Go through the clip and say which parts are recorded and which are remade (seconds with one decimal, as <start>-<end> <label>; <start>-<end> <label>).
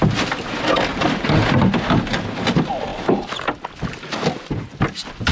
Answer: 0.0-5.3 recorded